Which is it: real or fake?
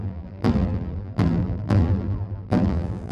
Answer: fake